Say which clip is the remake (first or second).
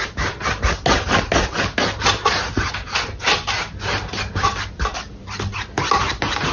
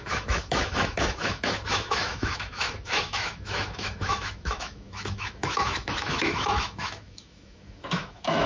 second